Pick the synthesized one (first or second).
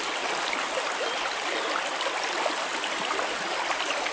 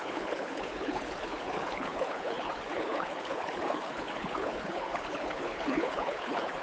second